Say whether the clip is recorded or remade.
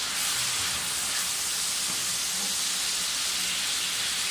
recorded